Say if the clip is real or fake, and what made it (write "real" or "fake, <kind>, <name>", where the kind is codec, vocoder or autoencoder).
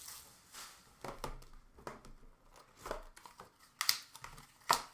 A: real